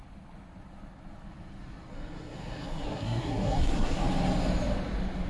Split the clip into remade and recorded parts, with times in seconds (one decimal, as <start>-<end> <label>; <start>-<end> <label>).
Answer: 0.0-1.9 recorded; 1.9-4.0 remade; 4.0-5.3 recorded